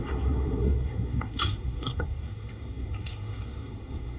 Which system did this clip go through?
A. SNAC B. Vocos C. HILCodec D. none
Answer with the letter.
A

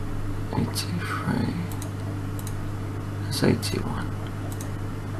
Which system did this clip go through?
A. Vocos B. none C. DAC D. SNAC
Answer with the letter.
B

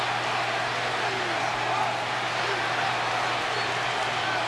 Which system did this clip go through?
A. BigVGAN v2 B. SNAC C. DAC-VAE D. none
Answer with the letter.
D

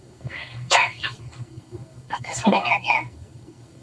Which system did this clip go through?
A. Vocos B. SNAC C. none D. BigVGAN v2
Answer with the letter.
B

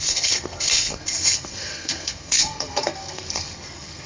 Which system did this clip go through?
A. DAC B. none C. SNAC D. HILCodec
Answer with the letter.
C